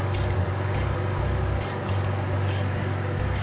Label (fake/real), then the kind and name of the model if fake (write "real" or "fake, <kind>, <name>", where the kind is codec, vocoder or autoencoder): fake, codec, DAC